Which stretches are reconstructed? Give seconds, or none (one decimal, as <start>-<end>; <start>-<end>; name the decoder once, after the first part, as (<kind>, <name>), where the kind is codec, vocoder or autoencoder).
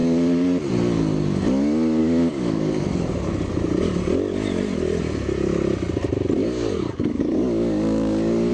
2.0-2.8 (codec, DAC); 6.4-8.5